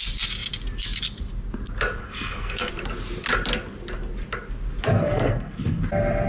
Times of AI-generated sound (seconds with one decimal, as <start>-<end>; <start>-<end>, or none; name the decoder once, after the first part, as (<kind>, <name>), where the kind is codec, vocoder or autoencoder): 2.0-2.7 (codec, SNAC); 5.0-5.8